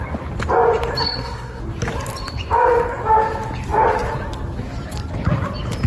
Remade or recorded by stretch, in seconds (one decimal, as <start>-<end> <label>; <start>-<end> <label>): 0.0-1.0 recorded; 1.0-1.6 remade; 1.6-5.9 recorded